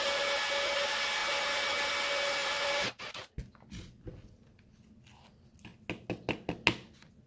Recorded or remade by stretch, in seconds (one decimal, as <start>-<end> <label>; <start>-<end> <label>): 0.0-1.2 recorded; 1.2-1.9 remade; 1.9-2.4 recorded; 2.4-3.4 remade; 3.4-7.3 recorded